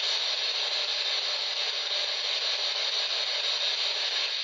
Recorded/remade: recorded